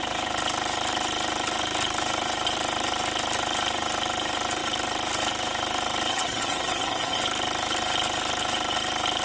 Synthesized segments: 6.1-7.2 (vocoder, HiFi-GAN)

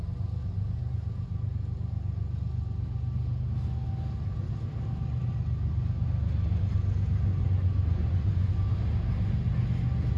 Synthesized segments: 7.3-8.5 (vocoder, Vocos)

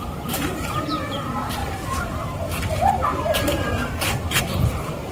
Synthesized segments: 0.0-5.1 (vocoder, BigVGAN v2)